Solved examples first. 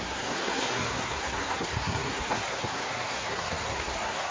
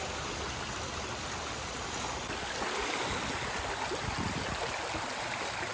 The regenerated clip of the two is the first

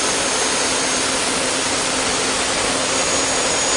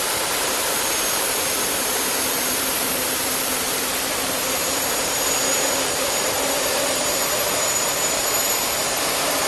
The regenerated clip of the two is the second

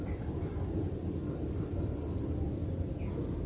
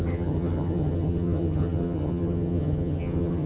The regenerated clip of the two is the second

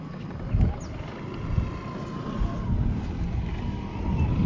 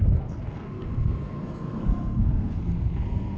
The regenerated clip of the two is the second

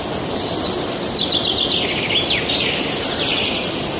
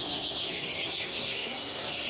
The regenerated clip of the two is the second